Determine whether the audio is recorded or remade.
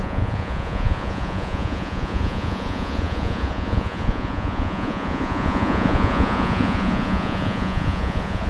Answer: remade